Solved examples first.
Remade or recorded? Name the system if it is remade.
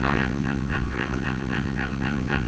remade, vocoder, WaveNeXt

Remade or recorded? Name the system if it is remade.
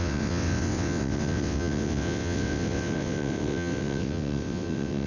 remade, vocoder, WaveNeXt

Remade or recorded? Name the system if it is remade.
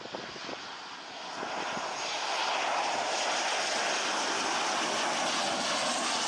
recorded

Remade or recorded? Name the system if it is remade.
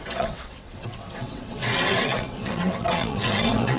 remade, vocoder, WaveNeXt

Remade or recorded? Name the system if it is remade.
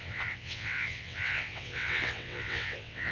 remade, vocoder, WaveNeXt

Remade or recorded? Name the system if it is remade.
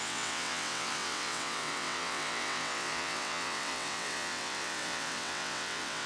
remade, vocoder, WaveNeXt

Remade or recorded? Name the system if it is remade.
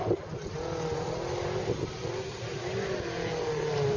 recorded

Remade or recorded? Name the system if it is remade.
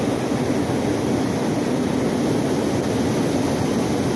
recorded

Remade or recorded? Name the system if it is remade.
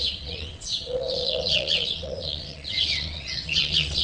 remade, vocoder, WaveNeXt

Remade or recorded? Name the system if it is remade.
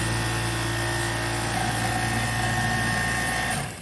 recorded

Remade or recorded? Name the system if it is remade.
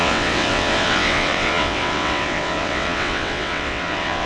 remade, vocoder, WaveNeXt